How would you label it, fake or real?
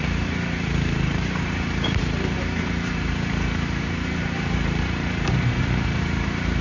fake